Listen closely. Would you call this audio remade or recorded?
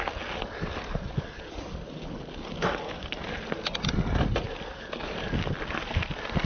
recorded